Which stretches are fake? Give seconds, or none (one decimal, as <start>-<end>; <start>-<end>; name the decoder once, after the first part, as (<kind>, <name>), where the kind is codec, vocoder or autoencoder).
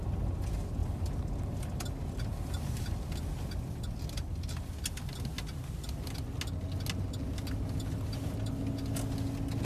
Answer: none